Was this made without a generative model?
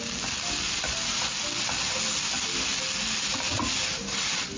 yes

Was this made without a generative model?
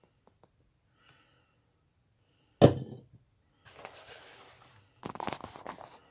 yes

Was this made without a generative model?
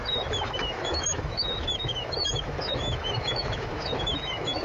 no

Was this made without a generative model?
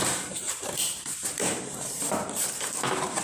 no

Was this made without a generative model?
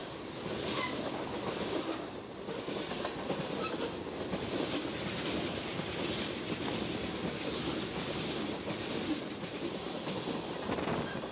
yes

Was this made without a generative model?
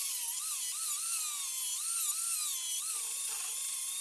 yes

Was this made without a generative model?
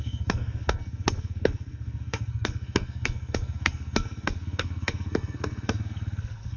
no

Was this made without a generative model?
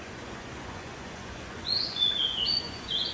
no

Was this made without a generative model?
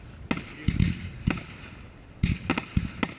yes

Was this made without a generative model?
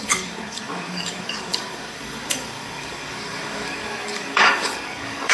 no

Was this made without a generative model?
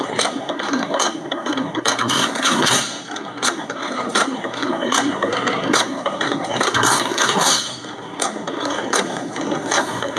no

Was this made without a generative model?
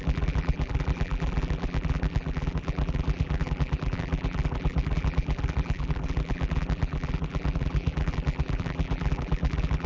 no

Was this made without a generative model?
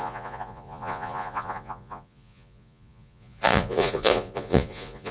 no